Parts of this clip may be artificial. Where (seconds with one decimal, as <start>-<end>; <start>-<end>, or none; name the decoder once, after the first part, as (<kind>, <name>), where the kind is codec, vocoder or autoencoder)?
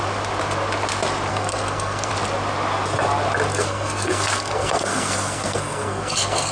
1.3-2.1 (codec, SNAC); 3.5-6.5